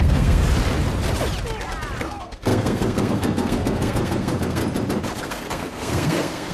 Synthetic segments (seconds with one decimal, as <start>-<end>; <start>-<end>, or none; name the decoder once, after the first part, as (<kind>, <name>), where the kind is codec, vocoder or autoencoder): 0.0-0.4 (codec, SNAC); 2.0-4.6; 5.2-6.5